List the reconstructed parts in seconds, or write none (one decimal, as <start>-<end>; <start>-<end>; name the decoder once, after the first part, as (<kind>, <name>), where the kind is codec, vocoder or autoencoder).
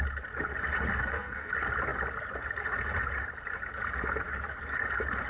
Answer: 1.0-1.5 (codec, SNAC)